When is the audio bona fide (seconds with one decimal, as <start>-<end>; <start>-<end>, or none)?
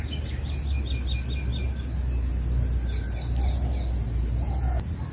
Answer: 0.0-5.1